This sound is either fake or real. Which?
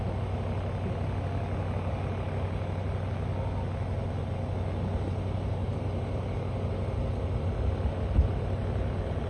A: real